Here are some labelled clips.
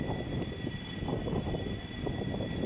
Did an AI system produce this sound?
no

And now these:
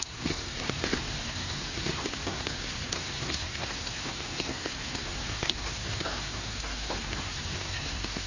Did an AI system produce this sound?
yes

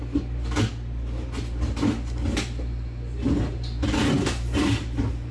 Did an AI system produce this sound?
no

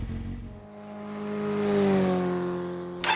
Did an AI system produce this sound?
no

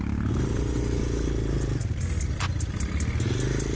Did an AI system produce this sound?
no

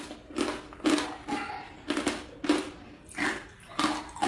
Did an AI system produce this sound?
no